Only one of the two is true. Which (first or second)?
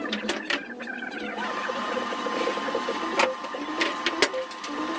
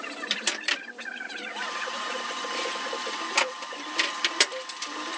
first